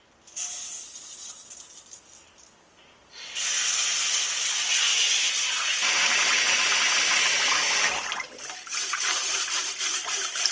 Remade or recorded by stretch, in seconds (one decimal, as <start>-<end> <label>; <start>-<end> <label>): 0.0-10.5 recorded